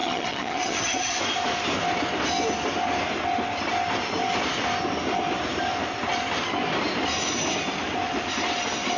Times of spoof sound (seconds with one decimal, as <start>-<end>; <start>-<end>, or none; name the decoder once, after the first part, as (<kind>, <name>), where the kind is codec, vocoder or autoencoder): 0.0-1.2 (vocoder, HiFi-GAN)

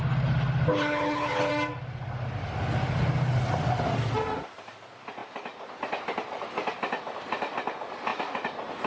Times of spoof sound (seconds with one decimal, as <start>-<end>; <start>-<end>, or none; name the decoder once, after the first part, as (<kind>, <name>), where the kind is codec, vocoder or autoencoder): 0.7-1.5 (codec, HILCodec)

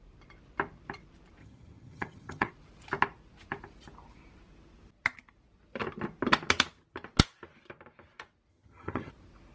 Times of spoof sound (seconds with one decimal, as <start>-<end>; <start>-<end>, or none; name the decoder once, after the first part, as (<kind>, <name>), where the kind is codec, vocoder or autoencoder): 1.4-2.5 (vocoder, HiFi-GAN); 8.5-9.1

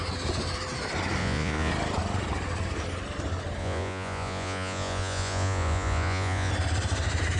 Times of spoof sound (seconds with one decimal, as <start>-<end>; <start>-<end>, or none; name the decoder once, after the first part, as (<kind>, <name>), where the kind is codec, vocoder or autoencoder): 1.2-1.7 (vocoder, Vocos); 3.6-6.5

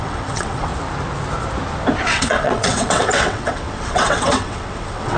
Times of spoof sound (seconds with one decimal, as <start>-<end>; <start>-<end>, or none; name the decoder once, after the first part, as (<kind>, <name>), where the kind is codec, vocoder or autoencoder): 0.0-0.7 (vocoder, WaveNeXt); 2.1-5.2

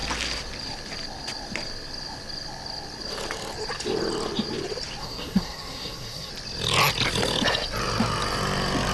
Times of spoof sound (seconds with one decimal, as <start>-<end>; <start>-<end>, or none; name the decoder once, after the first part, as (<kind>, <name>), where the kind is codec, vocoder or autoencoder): 5.0-6.3 (codec, SNAC)

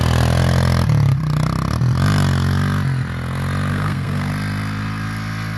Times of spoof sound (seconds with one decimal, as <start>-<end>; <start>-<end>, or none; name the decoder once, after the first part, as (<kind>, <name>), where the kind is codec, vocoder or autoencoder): 3.7-4.3 (codec, SNAC)